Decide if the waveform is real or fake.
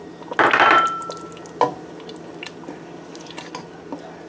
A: real